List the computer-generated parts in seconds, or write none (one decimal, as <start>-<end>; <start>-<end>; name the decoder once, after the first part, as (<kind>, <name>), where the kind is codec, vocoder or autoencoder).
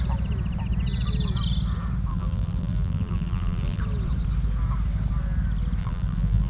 2.1-3.8 (vocoder, BigVGAN v2); 5.8-6.5